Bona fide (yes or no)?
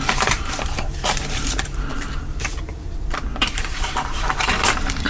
no